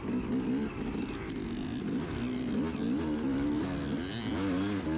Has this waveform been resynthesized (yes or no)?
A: no